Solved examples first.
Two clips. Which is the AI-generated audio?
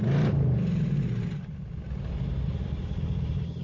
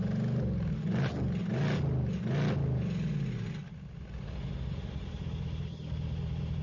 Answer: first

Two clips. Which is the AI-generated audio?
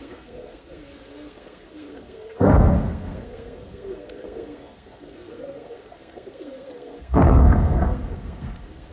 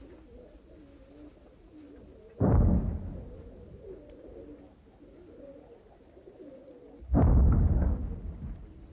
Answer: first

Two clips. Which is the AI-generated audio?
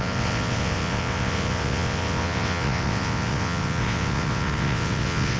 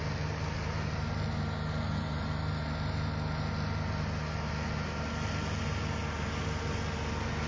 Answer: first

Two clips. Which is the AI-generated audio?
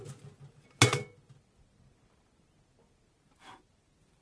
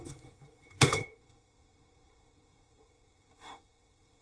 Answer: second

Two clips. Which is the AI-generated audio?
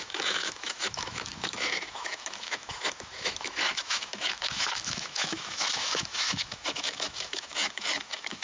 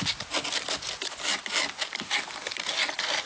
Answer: first